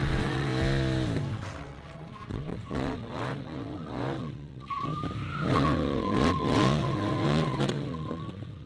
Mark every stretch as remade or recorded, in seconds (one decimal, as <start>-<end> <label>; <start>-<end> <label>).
0.0-0.5 remade; 0.5-1.3 recorded; 1.3-4.9 remade; 4.9-5.5 recorded; 5.5-8.7 remade

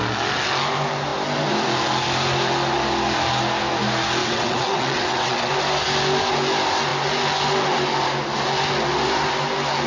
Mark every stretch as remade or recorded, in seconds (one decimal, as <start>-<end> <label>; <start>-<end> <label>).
0.0-4.2 recorded; 4.2-5.5 remade; 5.5-9.9 recorded

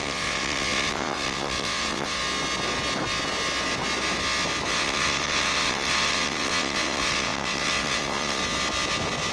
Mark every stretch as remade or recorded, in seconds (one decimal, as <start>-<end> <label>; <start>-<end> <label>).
0.0-2.2 remade; 2.2-4.7 recorded; 4.7-8.4 remade; 8.4-9.3 recorded